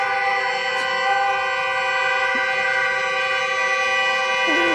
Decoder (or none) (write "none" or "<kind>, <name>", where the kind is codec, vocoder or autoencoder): none